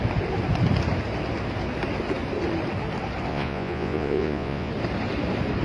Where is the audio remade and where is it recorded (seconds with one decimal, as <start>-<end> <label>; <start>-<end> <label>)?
0.0-3.3 recorded; 3.3-4.7 remade; 4.7-5.6 recorded